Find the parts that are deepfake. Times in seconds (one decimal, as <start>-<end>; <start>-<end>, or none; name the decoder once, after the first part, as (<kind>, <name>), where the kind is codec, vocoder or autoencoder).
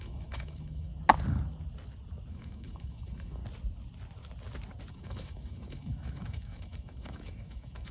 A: 0.0-0.9 (autoencoder, DAC-VAE); 2.3-3.4; 4.9-7.9